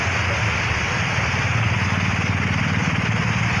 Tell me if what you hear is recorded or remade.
recorded